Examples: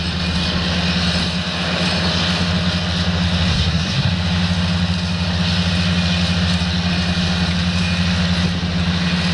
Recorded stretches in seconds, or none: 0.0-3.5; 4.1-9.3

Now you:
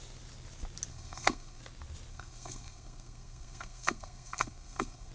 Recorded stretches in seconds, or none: 0.0-0.9; 1.6-2.1

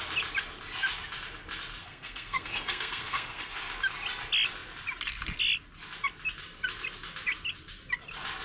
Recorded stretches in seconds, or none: 0.0-1.8; 3.5-8.4

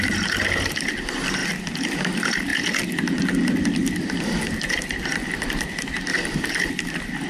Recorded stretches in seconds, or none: 0.0-7.3

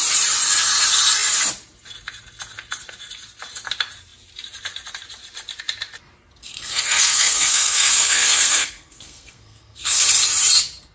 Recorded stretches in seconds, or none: 0.0-6.4; 10.0-10.9

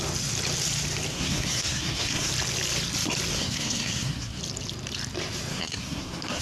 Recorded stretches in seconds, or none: 0.0-1.1; 2.3-3.3; 4.4-5.5

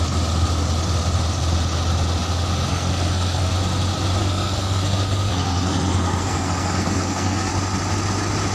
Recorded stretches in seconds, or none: 0.0-2.7; 3.5-4.2; 7.5-8.5

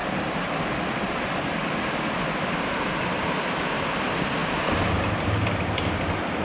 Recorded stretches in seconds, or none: 0.0-6.4